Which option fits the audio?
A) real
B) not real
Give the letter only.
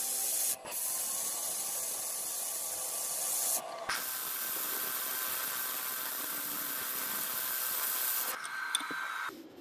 A